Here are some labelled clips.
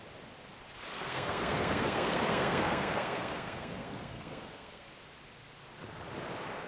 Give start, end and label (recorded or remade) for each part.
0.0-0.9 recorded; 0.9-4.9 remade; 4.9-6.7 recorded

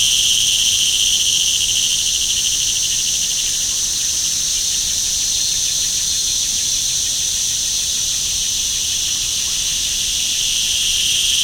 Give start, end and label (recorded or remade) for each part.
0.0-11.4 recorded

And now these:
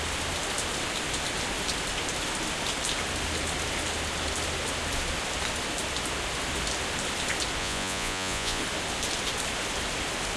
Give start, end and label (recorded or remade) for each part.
0.0-7.6 recorded; 7.6-8.6 remade; 8.6-10.4 recorded

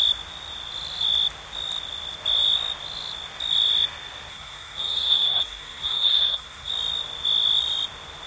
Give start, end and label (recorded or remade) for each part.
0.0-4.3 recorded; 4.3-6.7 remade; 6.7-8.3 recorded

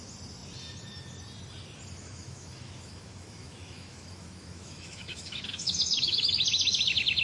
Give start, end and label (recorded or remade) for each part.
0.0-2.0 recorded; 2.0-6.3 remade; 6.3-7.2 recorded